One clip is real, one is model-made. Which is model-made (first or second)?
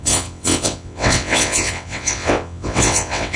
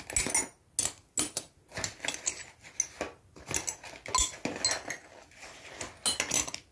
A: first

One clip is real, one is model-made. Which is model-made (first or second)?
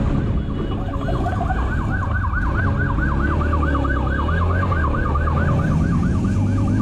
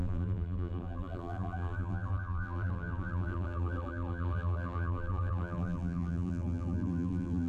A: second